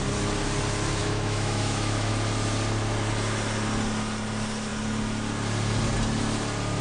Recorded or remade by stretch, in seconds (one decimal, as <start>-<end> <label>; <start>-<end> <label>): 0.0-1.0 recorded; 1.0-2.1 remade; 2.1-6.8 recorded